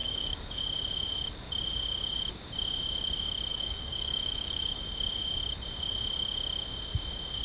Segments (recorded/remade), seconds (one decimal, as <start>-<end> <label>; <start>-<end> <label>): 0.0-0.6 remade; 0.6-3.5 recorded; 3.5-4.8 remade; 4.8-7.4 recorded